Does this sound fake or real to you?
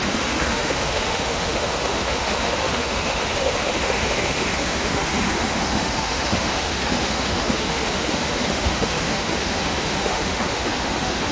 fake